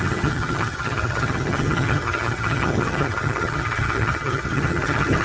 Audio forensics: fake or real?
fake